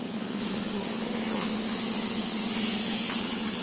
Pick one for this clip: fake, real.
fake